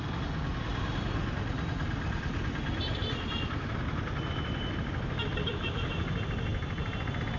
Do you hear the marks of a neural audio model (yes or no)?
no